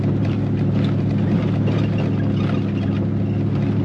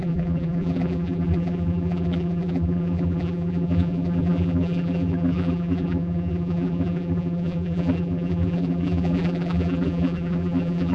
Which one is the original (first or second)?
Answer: first